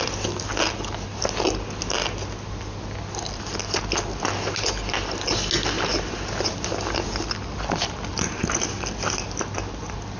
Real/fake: real